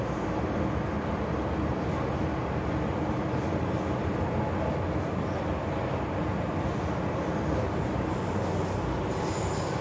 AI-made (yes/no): no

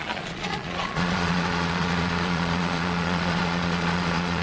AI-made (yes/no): yes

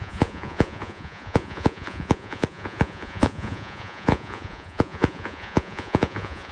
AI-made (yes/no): yes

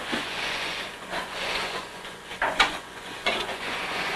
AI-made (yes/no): yes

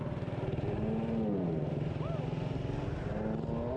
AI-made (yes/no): no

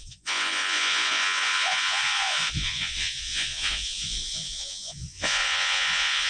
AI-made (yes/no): yes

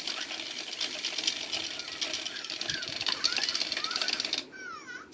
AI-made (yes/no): no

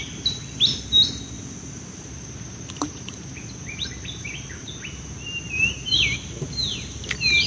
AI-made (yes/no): no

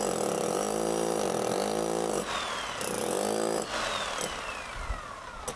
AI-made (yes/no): no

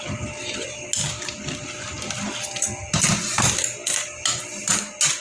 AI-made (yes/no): no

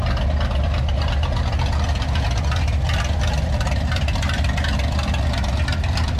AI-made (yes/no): no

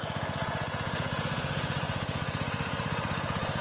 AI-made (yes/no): yes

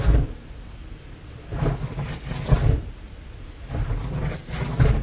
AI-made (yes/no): no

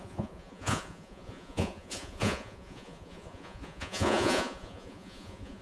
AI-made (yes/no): yes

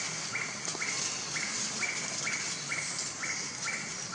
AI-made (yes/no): no